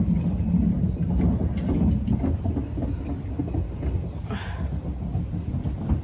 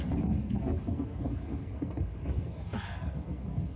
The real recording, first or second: first